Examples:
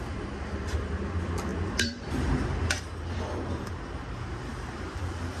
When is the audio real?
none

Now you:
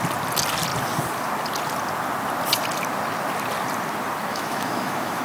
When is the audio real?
0.0-4.3

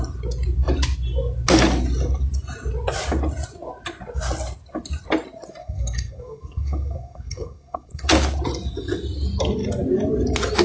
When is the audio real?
0.0-5.6; 8.1-10.6

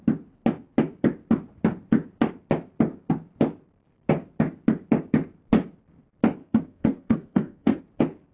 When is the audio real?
0.0-6.4; 7.8-8.3

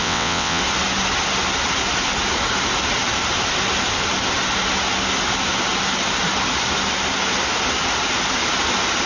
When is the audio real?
0.6-9.1

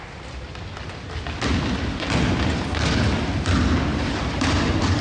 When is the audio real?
0.0-3.9

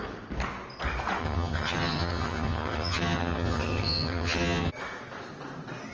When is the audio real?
0.0-1.2; 4.7-5.9

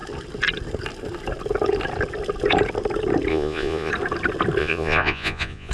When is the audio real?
0.0-3.3; 3.9-4.6